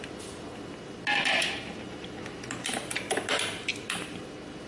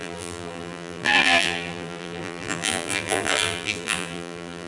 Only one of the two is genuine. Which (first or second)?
first